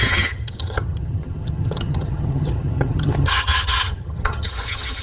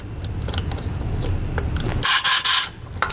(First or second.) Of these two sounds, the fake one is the first